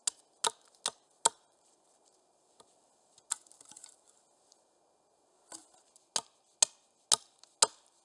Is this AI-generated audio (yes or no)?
no